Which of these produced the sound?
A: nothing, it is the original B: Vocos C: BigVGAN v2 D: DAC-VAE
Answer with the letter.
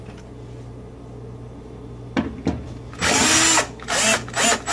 A